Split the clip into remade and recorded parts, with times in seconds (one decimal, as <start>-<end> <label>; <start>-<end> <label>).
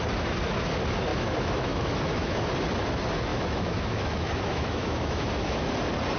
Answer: 0.0-1.1 recorded; 1.1-2.4 remade; 2.4-3.3 recorded; 3.3-5.7 remade; 5.7-6.2 recorded